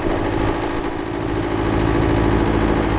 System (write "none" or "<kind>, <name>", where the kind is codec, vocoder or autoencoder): none